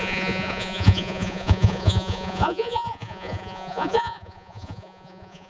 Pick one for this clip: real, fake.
fake